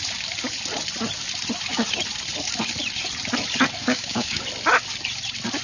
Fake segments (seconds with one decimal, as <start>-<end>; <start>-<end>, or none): 3.8-4.4